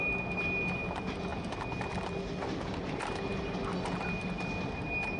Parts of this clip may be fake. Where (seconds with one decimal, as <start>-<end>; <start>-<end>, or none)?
none

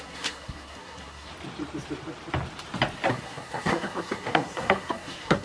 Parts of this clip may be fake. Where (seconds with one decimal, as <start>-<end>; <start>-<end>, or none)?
0.0-1.3; 3.1-5.4

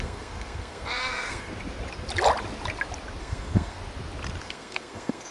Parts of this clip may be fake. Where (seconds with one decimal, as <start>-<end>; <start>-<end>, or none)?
0.0-1.5; 3.2-3.8; 4.4-5.3

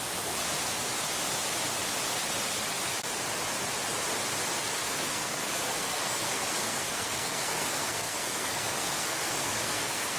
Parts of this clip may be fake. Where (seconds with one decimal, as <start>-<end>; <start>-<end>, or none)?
4.6-10.2